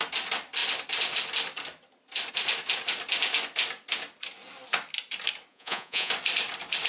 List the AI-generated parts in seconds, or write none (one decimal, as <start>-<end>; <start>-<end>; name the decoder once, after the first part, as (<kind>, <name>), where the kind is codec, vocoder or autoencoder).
5.5-6.1 (vocoder, Vocos)